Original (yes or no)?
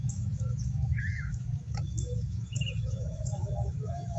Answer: no